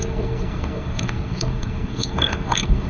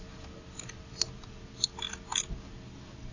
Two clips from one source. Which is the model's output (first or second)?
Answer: first